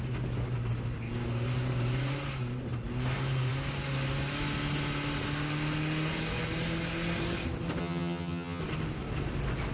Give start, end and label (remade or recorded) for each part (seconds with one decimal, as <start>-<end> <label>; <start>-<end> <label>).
0.0-7.8 recorded; 7.8-8.6 remade; 8.6-9.7 recorded